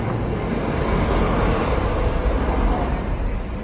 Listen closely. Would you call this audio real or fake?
real